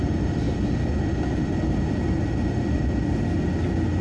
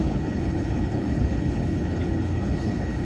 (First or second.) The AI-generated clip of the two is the second